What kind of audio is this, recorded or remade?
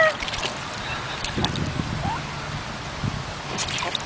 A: recorded